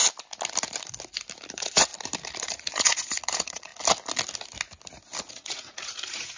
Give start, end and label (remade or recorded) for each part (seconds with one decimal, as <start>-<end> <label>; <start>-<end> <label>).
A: 0.0-1.5 recorded; 1.5-1.9 remade; 1.9-2.4 recorded; 2.4-3.7 remade; 3.7-5.3 recorded; 5.3-6.4 remade